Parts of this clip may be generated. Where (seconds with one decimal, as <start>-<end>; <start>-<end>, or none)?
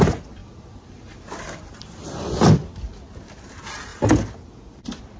none